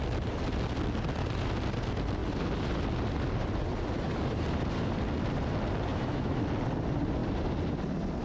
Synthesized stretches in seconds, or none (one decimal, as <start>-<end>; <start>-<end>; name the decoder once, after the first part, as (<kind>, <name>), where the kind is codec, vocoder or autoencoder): 5.9-6.4 (autoencoder, DAC-VAE)